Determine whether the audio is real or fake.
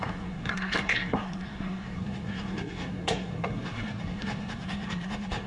fake